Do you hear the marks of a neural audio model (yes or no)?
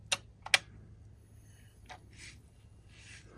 no